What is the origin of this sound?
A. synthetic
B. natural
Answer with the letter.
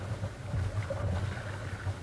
B